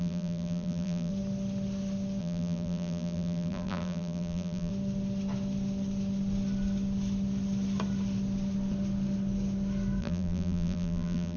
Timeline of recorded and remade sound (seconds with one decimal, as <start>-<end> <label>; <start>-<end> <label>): 0.0-1.1 remade; 1.1-2.2 recorded; 2.2-4.7 remade; 4.7-10.0 recorded; 10.0-11.4 remade